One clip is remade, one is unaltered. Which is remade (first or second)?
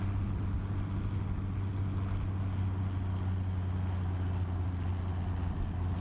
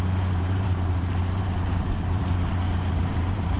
second